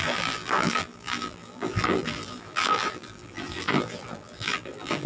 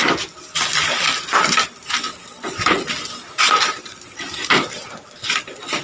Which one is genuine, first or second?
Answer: second